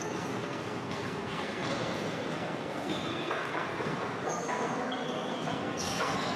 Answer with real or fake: fake